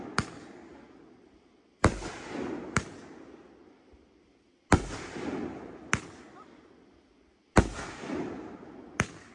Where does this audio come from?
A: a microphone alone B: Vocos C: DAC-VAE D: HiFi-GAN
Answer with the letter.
A